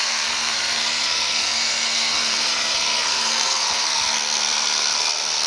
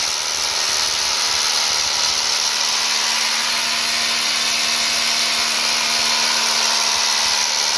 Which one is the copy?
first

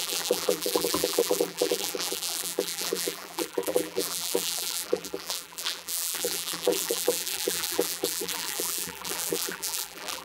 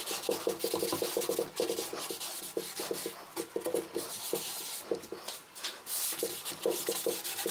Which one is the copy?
first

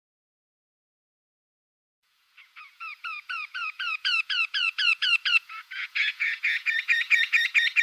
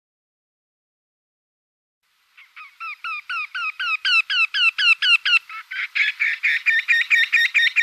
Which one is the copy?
first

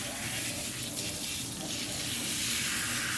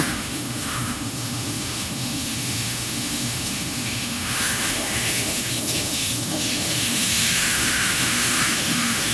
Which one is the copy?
second